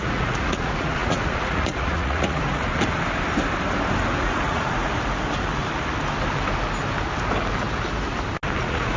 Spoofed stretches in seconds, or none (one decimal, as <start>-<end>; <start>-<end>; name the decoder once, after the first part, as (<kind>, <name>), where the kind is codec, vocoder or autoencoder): 0.0-2.7 (vocoder, Vocos); 4.2-4.9; 8.6-9.0